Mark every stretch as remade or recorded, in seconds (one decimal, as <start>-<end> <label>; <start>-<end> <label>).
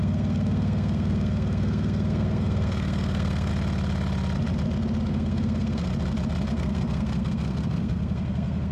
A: 0.0-3.5 remade; 3.5-5.1 recorded; 5.1-5.9 remade; 5.9-6.5 recorded; 6.5-8.7 remade